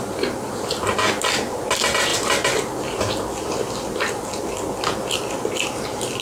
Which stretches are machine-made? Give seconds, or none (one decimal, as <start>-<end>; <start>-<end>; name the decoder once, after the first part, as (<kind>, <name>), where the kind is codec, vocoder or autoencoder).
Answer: none